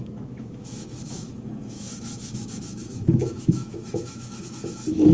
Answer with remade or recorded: remade